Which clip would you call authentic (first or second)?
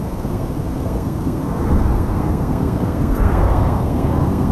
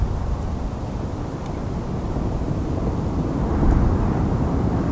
second